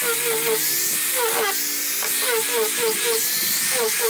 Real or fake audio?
real